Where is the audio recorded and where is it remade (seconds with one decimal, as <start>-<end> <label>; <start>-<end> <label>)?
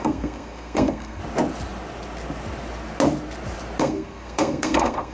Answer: 0.0-1.2 remade; 1.2-3.8 recorded; 3.8-5.1 remade